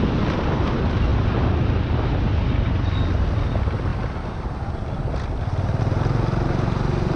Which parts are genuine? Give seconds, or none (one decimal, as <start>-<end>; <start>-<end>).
0.0-7.2